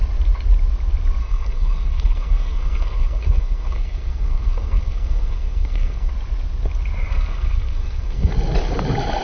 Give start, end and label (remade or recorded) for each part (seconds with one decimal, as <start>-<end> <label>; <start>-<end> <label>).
0.0-1.2 recorded; 1.2-6.1 remade; 6.1-7.1 recorded; 7.1-8.3 remade; 8.3-9.2 recorded